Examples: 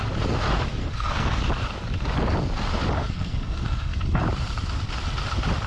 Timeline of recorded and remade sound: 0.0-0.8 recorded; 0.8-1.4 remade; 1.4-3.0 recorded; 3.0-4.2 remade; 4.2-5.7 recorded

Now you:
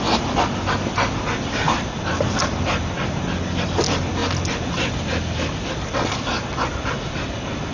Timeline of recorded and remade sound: 0.0-7.7 recorded

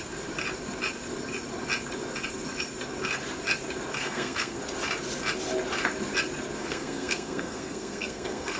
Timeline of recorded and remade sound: 0.0-4.0 recorded; 4.0-4.6 remade; 4.6-6.6 recorded; 6.6-8.6 remade

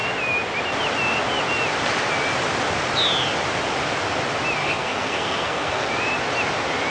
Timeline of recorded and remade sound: 0.0-4.6 recorded; 4.6-5.9 remade; 5.9-6.9 recorded

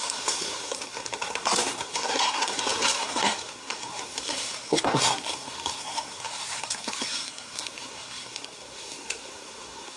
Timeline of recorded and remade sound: 0.0-10.0 remade

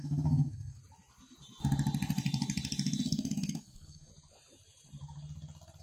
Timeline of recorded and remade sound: 0.0-0.8 remade; 0.8-3.0 recorded; 3.0-4.1 remade; 4.1-5.8 recorded

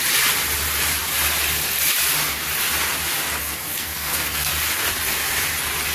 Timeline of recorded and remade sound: 0.0-3.4 recorded; 3.4-4.5 remade; 4.5-5.9 recorded

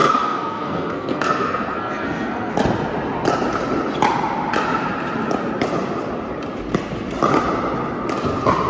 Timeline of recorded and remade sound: 0.0-2.5 remade; 2.5-8.7 recorded